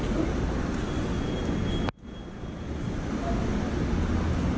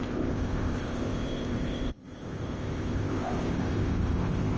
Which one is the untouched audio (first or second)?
first